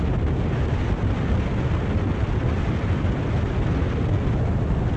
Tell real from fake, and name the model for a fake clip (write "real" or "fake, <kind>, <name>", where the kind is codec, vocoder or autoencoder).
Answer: real